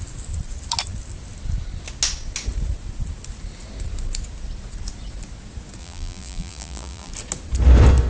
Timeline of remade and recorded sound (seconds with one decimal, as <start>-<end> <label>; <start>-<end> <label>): 0.0-5.8 recorded; 5.8-7.1 remade; 7.1-8.1 recorded